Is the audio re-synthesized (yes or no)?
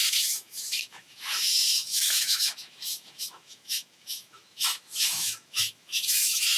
yes